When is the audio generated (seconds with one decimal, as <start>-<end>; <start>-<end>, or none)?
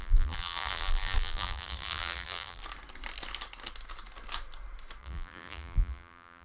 0.0-2.6; 5.0-6.4